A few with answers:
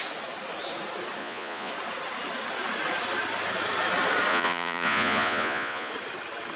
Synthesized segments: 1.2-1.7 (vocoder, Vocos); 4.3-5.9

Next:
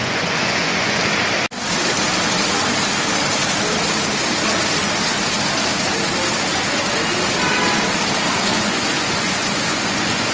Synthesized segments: 0.0-1.0 (vocoder, Vocos); 8.5-10.3

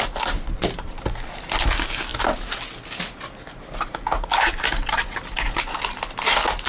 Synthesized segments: none